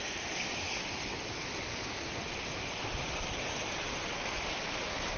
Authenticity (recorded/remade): recorded